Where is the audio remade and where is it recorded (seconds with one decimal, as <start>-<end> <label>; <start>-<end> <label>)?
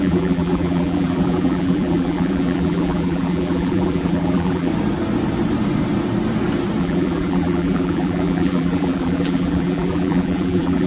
0.0-4.7 remade; 4.7-6.8 recorded; 6.8-10.9 remade